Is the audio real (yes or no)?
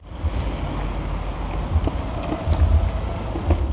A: yes